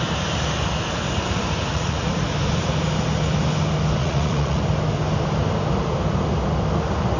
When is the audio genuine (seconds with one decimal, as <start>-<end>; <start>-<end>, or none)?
0.0-1.7; 2.2-4.0; 4.6-7.2